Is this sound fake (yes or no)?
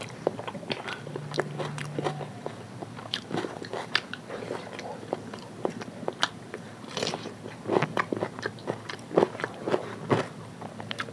yes